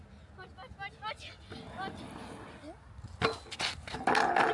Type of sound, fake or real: real